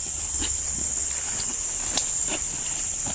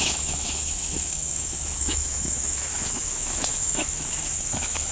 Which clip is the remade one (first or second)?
second